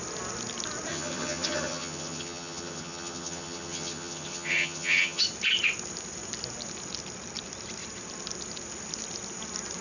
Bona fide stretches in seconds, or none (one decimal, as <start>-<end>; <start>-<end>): 0.0-0.9; 5.2-9.8